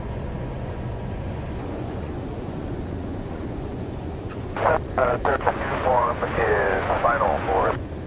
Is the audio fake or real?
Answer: fake